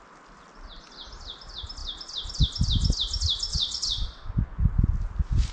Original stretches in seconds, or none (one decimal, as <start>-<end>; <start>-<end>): 0.0-3.5; 4.3-5.5